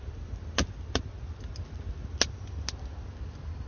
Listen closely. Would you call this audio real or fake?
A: real